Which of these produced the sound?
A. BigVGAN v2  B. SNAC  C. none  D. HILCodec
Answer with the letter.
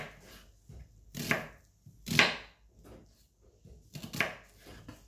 C